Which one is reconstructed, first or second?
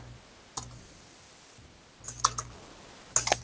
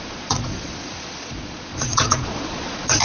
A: second